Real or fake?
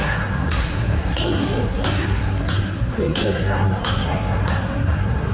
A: fake